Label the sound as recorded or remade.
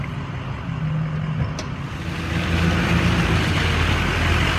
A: recorded